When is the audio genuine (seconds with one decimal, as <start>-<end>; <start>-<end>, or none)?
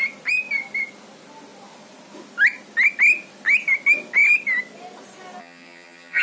0.0-5.4